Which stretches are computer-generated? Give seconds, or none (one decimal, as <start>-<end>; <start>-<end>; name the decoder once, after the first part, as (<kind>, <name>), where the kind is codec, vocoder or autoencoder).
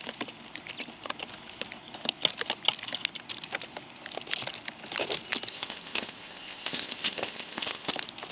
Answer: 5.5-7.9 (codec, ZipCodec)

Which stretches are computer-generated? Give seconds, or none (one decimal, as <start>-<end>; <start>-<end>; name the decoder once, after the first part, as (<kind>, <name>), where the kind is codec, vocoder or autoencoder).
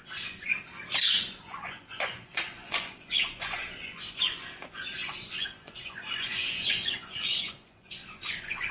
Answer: 0.0-0.5 (vocoder, Vocos); 1.2-8.7